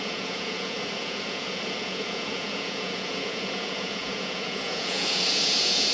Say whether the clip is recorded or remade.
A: remade